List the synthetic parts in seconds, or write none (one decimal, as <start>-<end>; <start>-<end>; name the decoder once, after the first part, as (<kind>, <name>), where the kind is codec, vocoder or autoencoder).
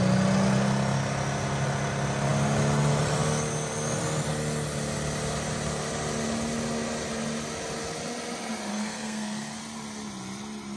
8.7-9.6 (codec, SNAC)